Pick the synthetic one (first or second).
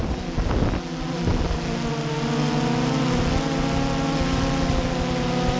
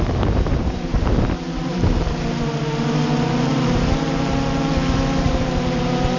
second